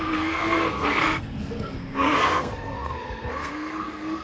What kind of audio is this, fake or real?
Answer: fake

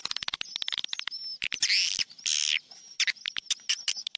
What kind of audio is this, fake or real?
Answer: real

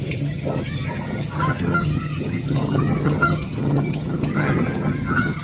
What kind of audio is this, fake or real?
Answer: fake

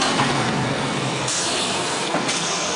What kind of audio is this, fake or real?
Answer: fake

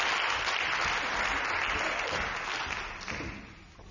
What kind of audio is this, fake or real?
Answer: real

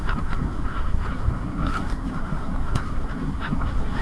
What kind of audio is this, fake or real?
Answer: fake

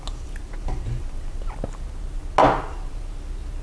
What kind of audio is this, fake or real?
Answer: real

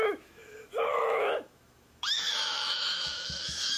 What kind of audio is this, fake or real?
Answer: fake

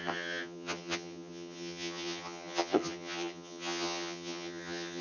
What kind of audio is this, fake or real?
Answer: fake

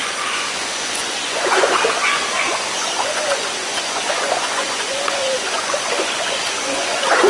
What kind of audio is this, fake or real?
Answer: fake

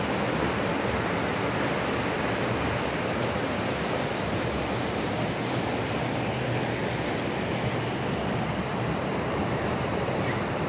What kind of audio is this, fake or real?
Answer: real